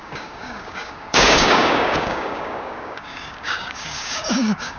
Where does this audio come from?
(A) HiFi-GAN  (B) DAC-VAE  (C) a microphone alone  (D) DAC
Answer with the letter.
D